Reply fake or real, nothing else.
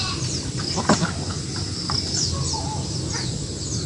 fake